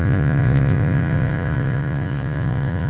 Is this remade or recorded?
remade